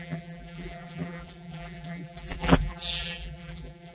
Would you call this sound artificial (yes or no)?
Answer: yes